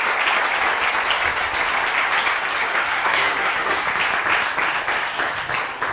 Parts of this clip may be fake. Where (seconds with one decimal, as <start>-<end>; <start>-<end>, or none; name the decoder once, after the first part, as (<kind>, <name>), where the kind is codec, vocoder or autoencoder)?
2.7-3.9 (codec, SNAC)

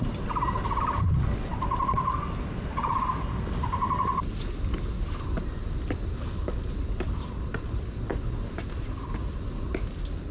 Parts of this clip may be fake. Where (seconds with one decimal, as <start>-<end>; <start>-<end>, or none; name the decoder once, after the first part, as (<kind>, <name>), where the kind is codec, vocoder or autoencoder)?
6.1-6.7 (codec, HILCodec)

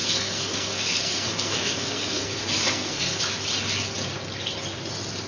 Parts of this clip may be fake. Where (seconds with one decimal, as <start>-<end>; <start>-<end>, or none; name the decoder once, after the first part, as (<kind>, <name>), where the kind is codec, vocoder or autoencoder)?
0.0-3.2 (codec, SNAC)

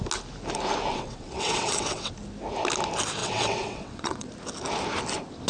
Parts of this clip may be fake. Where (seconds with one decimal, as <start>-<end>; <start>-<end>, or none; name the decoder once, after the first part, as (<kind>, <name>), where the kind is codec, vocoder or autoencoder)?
0.9-2.1 (vocoder, WaveNeXt); 3.2-4.3

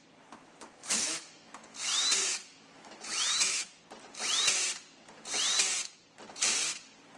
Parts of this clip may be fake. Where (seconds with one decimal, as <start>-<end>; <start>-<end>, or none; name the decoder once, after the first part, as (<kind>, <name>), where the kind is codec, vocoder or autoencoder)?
0.8-1.5 (autoencoder, DAC-VAE); 2.2-3.8

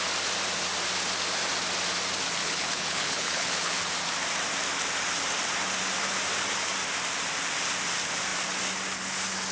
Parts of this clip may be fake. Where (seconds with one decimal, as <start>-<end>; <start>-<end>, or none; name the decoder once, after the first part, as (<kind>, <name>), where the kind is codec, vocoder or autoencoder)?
2.4-3.8 (codec, HILCodec)

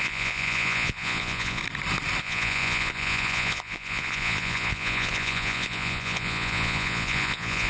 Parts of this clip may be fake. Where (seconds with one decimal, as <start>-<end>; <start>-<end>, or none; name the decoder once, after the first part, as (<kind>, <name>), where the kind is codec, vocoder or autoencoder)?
0.0-1.6 (vocoder, Vocos); 2.2-7.7